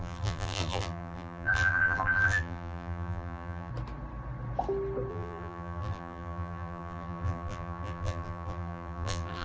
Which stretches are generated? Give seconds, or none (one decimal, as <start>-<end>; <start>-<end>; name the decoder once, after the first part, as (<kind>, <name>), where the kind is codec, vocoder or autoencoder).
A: 0.0-3.7 (vocoder, BigVGAN v2); 5.1-9.4